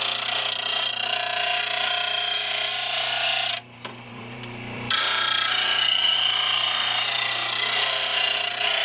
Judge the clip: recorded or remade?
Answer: remade